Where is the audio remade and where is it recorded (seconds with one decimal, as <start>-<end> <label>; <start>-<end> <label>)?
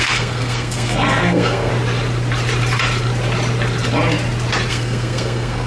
0.0-1.7 remade; 1.7-4.7 recorded; 4.7-5.7 remade